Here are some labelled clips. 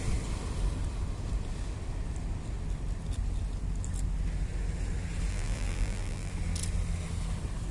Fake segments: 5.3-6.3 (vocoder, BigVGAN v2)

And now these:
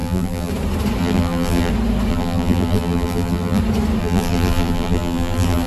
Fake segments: 0.0-0.5 (vocoder, BigVGAN v2); 1.0-1.7; 2.1-3.6; 4.0-5.7

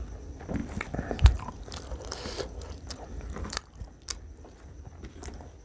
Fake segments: none

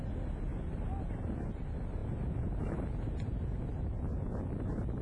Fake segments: none

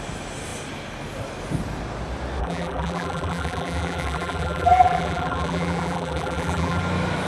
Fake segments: 2.4-6.8 (vocoder, BigVGAN v2)

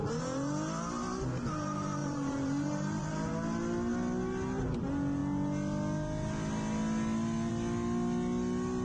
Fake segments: 2.0-3.3 (vocoder, BigVGAN v2)

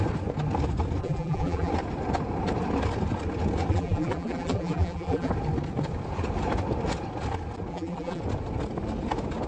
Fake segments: 1.0-1.7 (vocoder, BigVGAN v2); 3.7-5.3; 7.7-8.2